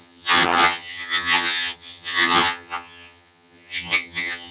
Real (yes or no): no